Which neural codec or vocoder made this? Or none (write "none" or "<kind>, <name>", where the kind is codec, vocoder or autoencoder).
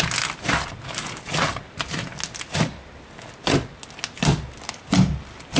none